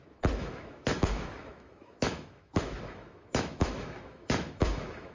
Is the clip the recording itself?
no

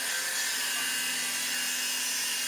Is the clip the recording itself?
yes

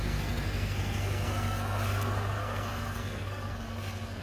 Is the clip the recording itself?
no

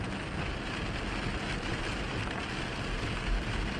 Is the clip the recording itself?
yes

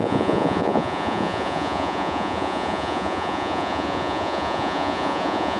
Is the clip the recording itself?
no